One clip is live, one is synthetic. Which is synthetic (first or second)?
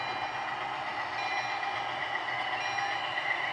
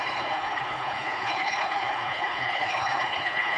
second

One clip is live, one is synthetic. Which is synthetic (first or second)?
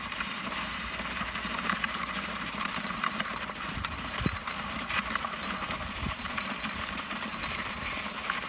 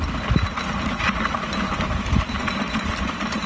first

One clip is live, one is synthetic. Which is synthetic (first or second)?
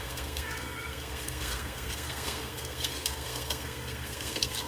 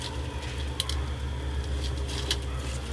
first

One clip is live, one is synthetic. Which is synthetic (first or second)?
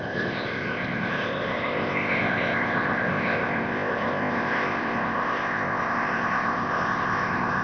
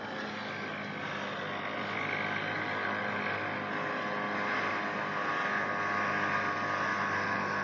first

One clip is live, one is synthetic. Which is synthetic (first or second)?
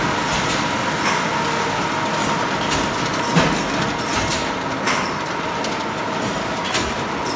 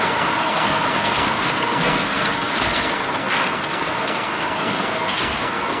second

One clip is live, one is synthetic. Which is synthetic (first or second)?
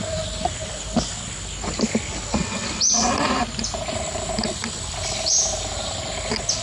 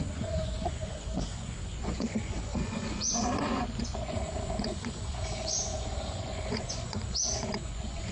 second